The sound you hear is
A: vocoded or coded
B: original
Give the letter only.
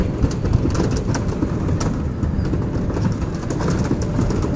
B